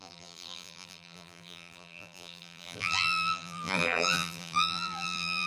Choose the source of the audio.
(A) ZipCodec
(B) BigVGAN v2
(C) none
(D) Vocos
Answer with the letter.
B